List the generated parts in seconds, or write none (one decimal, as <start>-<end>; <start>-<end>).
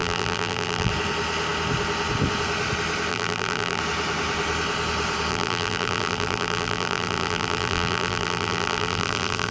0.0-0.9; 3.1-3.8; 5.3-9.5